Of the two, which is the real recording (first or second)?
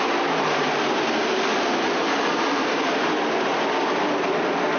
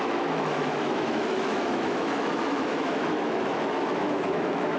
first